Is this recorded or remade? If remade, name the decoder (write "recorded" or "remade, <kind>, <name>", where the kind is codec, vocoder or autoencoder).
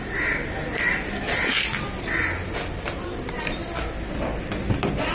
recorded